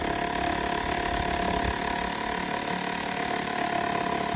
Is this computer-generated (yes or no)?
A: no